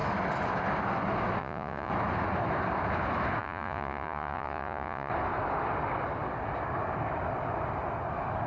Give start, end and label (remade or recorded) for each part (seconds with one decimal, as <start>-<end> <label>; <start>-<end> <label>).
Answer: 0.0-1.4 recorded; 1.4-1.9 remade; 1.9-3.4 recorded; 3.4-5.1 remade; 5.1-8.5 recorded